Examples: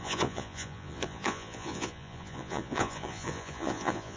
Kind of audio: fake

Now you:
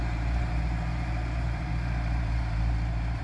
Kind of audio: fake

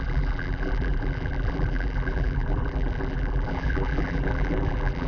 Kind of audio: fake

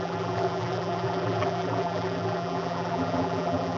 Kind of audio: fake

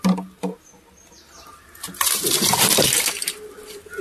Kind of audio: real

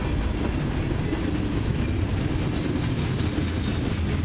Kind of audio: real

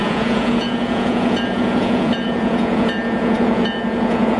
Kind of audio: fake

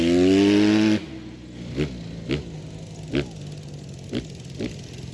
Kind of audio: real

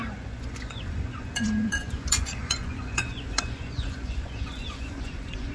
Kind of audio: fake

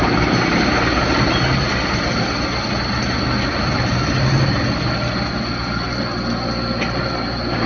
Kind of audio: real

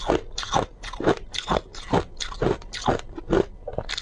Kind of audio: real